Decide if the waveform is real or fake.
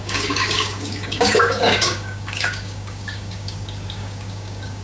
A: fake